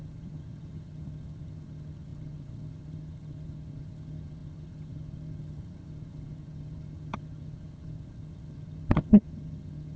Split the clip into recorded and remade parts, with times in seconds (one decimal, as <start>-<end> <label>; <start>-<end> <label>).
0.0-10.0 remade